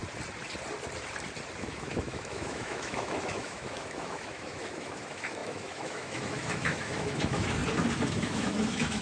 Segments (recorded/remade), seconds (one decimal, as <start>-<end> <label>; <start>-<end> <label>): 0.0-1.6 recorded; 1.6-7.6 remade; 7.6-8.1 recorded; 8.1-9.0 remade